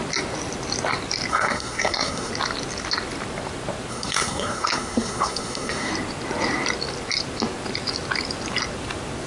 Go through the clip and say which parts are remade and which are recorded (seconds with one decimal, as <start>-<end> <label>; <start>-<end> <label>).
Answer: 0.0-1.3 recorded; 1.3-2.3 remade; 2.3-3.9 recorded; 3.9-5.9 remade; 5.9-9.3 recorded